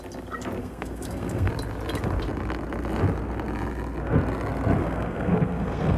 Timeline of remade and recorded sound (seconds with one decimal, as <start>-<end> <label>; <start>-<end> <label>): 0.0-0.6 recorded; 0.6-1.5 remade; 1.5-4.8 recorded; 4.8-6.0 remade